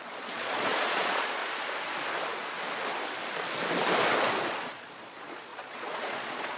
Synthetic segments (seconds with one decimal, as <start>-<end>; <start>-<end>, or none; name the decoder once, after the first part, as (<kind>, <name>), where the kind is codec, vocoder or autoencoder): 0.0-1.4 (vocoder, Vocos); 4.7-6.6